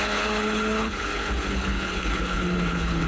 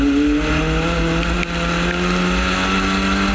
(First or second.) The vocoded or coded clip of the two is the first